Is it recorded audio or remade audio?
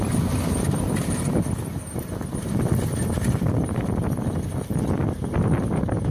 remade